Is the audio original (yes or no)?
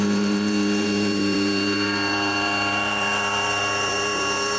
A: no